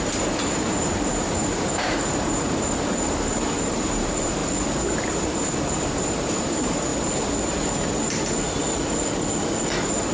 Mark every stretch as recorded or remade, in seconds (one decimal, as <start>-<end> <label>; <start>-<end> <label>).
0.0-4.4 remade; 4.4-5.1 recorded; 5.1-6.9 remade; 6.9-10.1 recorded